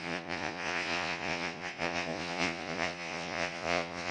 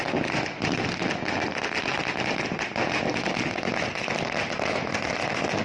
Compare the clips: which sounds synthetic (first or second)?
first